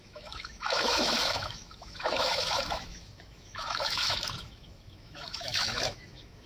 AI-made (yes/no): yes